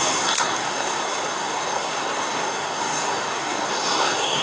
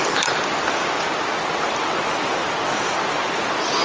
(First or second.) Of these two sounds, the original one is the second